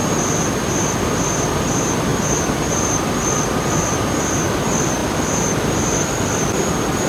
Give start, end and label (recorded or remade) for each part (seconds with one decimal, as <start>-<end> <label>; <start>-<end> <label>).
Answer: 0.0-2.1 recorded; 2.1-3.3 remade; 3.3-7.1 recorded